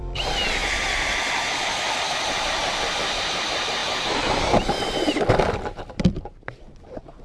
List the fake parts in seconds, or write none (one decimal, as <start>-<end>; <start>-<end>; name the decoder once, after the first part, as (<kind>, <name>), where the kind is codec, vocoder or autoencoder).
0.0-0.6 (vocoder, BigVGAN v2); 1.2-7.2